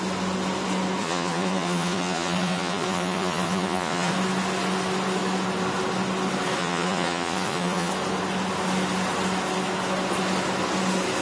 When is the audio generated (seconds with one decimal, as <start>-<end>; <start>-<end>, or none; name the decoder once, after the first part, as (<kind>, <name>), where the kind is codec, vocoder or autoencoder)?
1.0-4.1 (vocoder, Vocos); 6.6-7.9